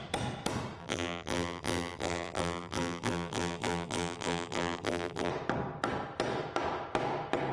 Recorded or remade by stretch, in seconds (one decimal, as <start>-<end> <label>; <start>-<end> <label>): 0.0-0.8 recorded; 0.8-5.3 remade; 5.3-7.5 recorded